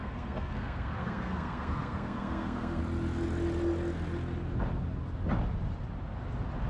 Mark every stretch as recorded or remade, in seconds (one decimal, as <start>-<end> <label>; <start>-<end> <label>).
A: 0.0-2.8 remade; 2.8-6.7 recorded